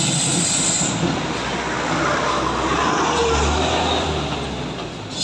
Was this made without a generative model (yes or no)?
yes